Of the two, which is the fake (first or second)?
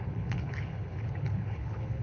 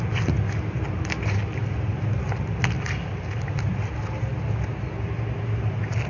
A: first